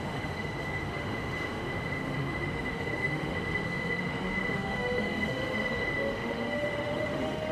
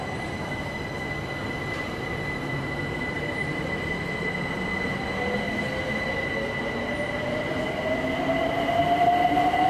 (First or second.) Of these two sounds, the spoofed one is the first